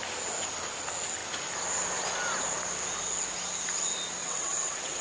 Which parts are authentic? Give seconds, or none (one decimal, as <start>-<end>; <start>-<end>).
0.0-4.2